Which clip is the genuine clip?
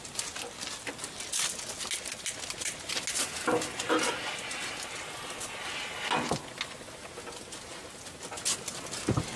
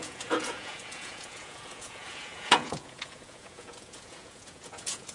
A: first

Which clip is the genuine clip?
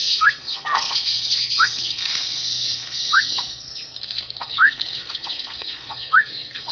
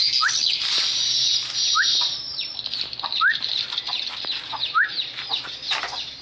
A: second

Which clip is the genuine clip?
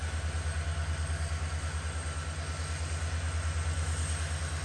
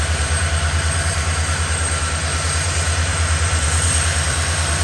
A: first